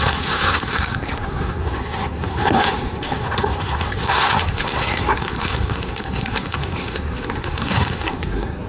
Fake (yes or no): yes